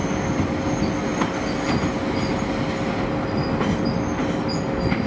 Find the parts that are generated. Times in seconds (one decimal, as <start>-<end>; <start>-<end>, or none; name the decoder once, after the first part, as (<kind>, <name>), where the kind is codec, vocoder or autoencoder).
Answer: none